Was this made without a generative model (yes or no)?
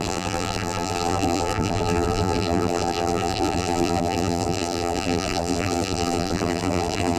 no